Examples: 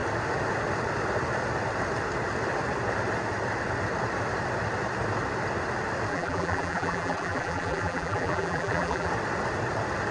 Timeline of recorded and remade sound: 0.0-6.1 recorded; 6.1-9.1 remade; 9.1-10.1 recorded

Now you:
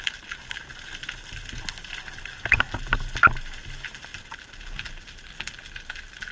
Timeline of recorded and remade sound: 0.0-2.3 recorded; 2.3-3.0 remade; 3.0-4.1 recorded; 4.1-4.9 remade; 4.9-6.3 recorded

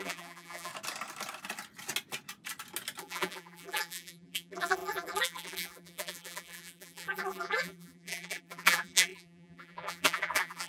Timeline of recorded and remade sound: 0.0-0.7 remade; 0.7-3.0 recorded; 3.0-10.7 remade

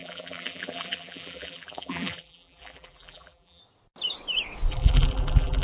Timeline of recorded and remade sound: 0.0-3.6 remade; 3.6-4.7 recorded; 4.7-5.6 remade

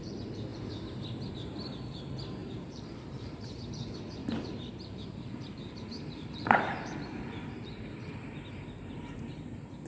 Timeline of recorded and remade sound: 0.0-2.4 recorded; 2.4-3.4 remade; 3.4-4.2 recorded; 4.2-8.1 remade; 8.1-9.9 recorded

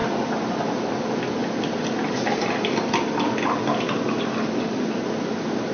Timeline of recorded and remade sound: 0.0-0.9 remade; 0.9-5.7 recorded

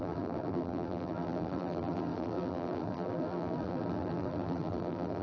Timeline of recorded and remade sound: 0.0-5.2 remade